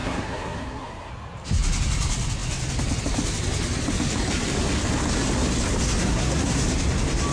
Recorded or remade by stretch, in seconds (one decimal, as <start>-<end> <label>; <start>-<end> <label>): 0.0-1.1 remade; 1.1-6.0 recorded; 6.0-6.6 remade; 6.6-7.3 recorded